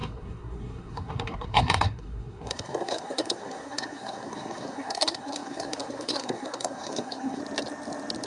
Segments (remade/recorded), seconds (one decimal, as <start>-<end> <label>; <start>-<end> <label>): 0.0-7.4 remade; 7.4-8.3 recorded